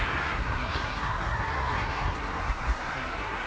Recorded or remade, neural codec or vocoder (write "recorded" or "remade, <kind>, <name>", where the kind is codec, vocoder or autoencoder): remade, codec, SNAC